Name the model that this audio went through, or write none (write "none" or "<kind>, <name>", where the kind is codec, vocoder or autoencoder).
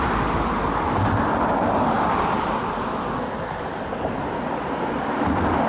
none